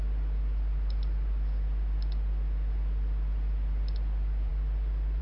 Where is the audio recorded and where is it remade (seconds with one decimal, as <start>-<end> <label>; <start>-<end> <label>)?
0.0-5.2 recorded